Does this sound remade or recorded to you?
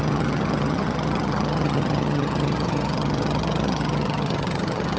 remade